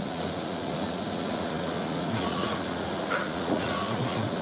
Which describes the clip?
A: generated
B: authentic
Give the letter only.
A